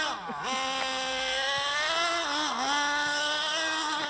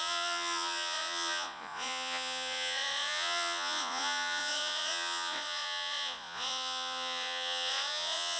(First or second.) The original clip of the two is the first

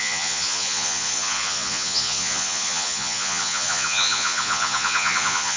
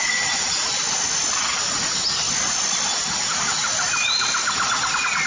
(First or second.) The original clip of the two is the second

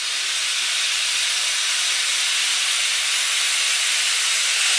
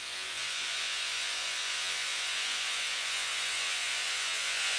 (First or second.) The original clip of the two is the first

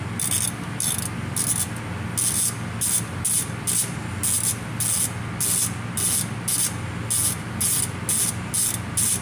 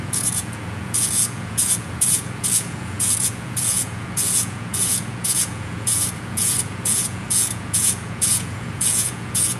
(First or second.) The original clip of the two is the first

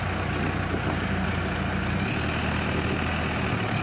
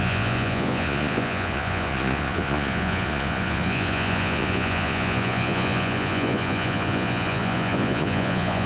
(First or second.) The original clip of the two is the first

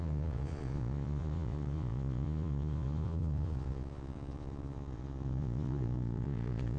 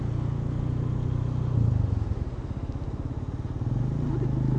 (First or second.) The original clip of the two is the second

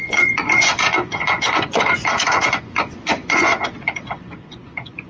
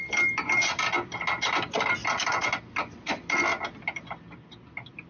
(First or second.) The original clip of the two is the second